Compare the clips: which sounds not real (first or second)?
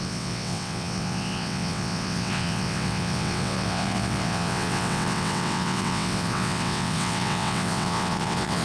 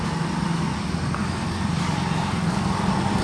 first